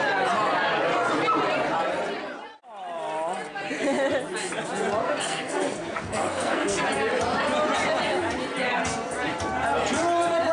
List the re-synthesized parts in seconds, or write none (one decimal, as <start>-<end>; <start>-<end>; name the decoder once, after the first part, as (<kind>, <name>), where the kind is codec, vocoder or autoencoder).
5.0-6.8 (codec, SNAC)